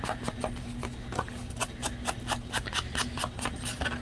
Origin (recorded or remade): recorded